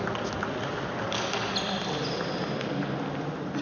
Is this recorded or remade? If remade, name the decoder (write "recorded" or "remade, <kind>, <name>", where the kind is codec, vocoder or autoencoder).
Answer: recorded